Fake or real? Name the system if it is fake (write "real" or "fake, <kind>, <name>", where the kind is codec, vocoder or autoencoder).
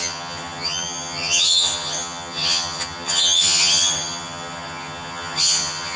fake, vocoder, HiFi-GAN